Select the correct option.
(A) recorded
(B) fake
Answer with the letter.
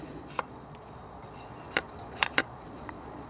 B